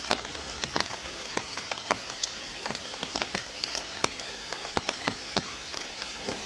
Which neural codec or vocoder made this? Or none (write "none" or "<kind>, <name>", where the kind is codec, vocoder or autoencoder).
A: codec, SNAC